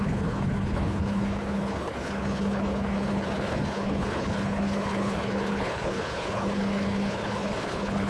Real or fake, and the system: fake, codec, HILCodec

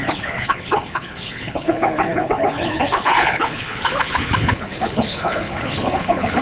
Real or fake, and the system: fake, codec, HILCodec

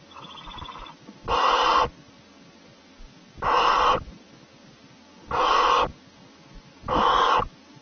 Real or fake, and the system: real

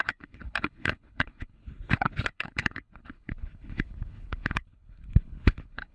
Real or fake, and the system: fake, codec, HILCodec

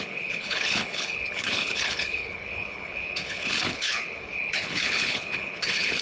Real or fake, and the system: fake, codec, HILCodec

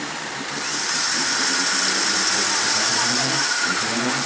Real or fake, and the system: real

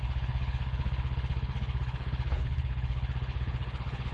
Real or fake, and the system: fake, codec, HILCodec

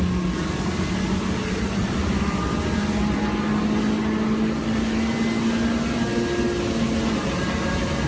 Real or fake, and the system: real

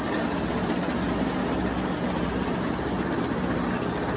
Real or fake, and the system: real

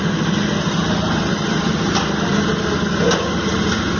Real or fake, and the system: real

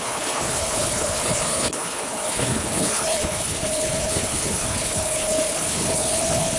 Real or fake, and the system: fake, codec, HILCodec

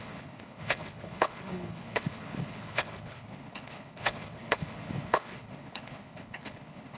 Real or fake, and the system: fake, codec, HILCodec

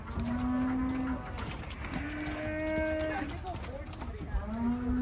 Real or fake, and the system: real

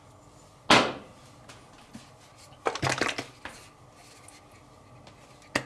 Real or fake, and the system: real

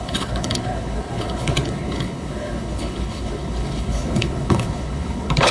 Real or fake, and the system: fake, codec, HILCodec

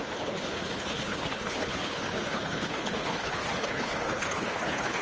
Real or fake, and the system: fake, codec, HILCodec